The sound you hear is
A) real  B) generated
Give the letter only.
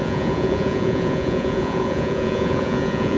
B